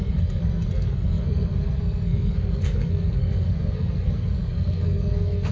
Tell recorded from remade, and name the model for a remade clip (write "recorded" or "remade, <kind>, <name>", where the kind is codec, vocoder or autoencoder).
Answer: remade, codec, SNAC